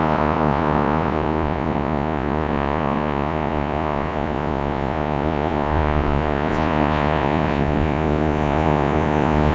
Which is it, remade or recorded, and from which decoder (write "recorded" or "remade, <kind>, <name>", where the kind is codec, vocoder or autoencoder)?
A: remade, vocoder, Vocos